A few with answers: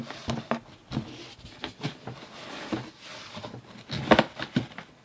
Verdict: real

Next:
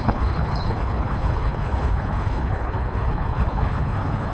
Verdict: fake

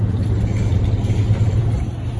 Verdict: real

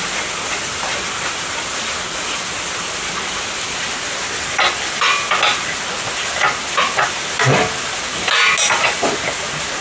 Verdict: real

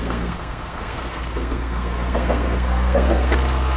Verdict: fake